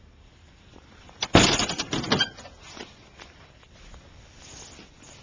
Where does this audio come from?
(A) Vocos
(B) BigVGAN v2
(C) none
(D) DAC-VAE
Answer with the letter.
B